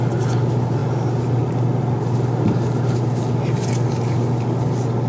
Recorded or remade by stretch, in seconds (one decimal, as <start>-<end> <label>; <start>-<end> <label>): 0.0-5.1 recorded